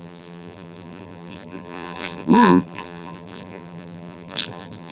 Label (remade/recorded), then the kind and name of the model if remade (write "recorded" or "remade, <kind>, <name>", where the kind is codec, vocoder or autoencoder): remade, vocoder, BigVGAN v2